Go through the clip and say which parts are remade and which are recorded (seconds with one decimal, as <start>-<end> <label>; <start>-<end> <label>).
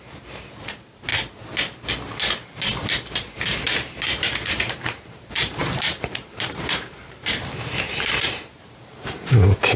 0.0-1.1 remade; 1.1-3.3 recorded; 3.3-9.8 remade